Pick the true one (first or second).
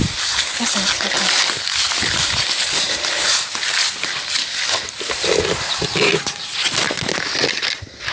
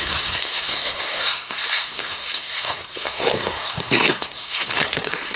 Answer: first